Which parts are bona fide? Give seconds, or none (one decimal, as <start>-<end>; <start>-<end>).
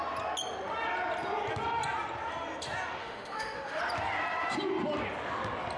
0.0-3.0; 3.8-5.8